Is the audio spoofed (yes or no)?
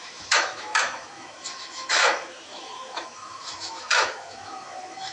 yes